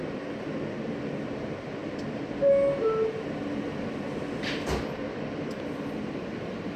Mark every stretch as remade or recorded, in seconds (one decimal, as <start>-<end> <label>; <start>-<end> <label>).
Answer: 0.0-6.8 recorded